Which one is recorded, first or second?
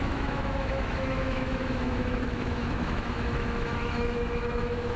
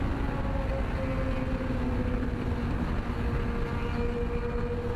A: second